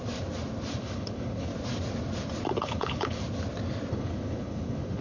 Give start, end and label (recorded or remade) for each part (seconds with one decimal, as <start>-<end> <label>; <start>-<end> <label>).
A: 0.0-0.8 recorded; 0.8-1.5 remade; 1.5-2.6 recorded; 2.6-3.2 remade; 3.2-3.9 recorded; 3.9-5.0 remade